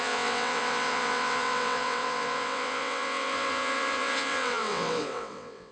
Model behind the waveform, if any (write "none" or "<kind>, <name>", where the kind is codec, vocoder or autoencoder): vocoder, WaveNeXt